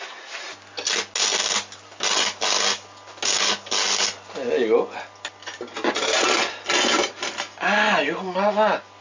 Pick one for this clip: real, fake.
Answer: real